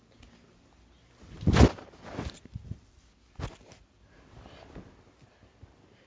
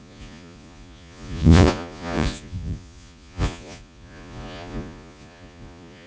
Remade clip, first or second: second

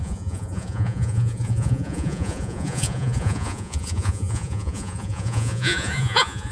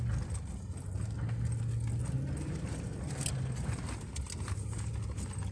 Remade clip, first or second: first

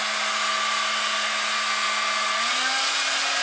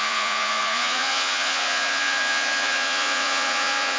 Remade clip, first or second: second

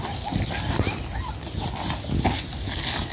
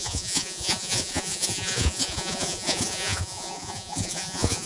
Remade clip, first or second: second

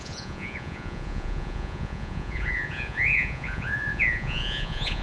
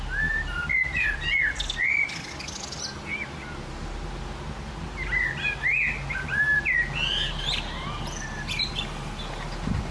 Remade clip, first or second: first